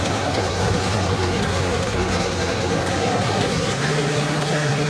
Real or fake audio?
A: fake